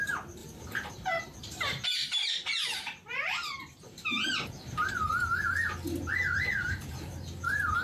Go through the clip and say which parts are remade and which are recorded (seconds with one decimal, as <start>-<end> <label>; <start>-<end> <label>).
0.0-0.4 recorded; 0.4-4.9 remade; 4.9-6.1 recorded; 6.1-6.9 remade; 6.9-7.8 recorded